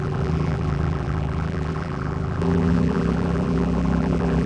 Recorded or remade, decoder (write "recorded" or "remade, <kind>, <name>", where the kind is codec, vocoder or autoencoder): remade, vocoder, BigVGAN v2